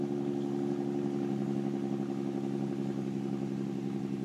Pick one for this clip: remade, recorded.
recorded